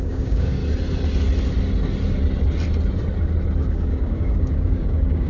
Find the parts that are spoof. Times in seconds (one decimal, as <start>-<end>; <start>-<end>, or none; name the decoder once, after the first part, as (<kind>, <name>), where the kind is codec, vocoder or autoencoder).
0.0-0.6 (codec, DAC); 3.7-5.3